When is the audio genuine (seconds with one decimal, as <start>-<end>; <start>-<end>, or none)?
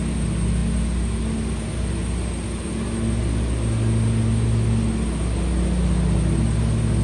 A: 0.0-7.0